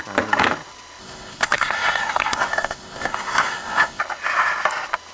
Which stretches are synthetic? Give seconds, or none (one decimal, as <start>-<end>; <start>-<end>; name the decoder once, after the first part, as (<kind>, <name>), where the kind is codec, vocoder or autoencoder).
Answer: 1.0-4.0 (codec, SNAC)

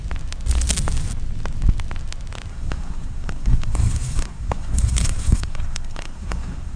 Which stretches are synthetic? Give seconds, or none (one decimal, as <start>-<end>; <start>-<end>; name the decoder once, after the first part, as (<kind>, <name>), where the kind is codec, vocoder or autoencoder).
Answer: 2.5-6.8 (codec, SNAC)

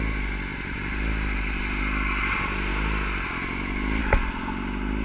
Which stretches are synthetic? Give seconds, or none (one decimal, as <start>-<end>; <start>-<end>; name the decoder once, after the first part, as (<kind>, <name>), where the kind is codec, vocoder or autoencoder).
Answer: 0.5-1.8 (vocoder, BigVGAN v2)

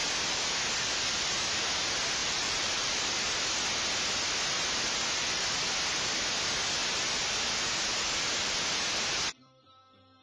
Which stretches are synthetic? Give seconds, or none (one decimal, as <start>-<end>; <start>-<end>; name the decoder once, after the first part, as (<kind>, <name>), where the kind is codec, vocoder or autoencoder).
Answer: 2.2-3.1 (vocoder, BigVGAN v2)

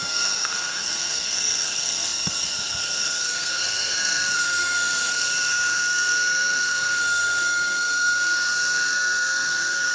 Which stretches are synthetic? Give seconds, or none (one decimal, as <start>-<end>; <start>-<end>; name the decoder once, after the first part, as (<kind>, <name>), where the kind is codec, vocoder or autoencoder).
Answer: 0.0-9.9 (codec, SNAC)

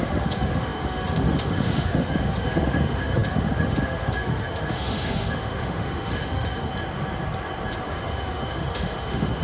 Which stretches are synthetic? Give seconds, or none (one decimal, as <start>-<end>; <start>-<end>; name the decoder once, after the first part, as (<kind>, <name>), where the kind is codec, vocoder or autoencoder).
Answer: 0.0-6.7 (autoencoder, DAC-VAE); 7.8-9.4

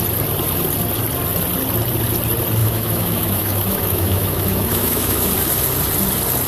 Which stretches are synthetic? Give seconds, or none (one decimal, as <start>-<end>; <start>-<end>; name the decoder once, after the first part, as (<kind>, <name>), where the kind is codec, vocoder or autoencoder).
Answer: 2.6-5.3 (autoencoder, DAC-VAE)